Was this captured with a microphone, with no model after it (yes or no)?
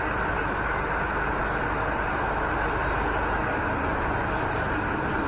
yes